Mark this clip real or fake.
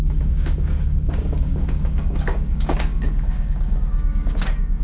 fake